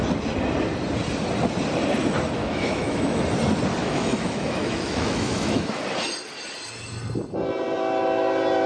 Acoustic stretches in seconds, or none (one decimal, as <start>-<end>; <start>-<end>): 0.0-2.4; 3.2-3.8; 5.8-8.7

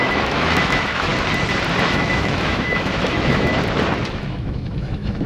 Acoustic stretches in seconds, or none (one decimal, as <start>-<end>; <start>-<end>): 1.1-1.9; 3.5-4.1

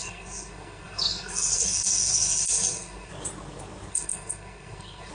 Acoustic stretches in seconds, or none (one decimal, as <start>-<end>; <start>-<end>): 3.1-3.9

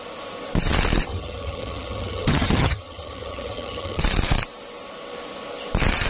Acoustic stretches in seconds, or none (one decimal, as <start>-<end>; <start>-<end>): 0.0-1.1; 4.0-6.1

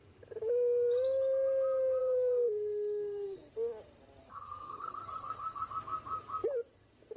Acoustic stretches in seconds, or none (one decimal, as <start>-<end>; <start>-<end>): 0.0-2.0; 3.5-4.2; 5.7-7.2